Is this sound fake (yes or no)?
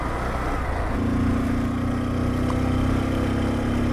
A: no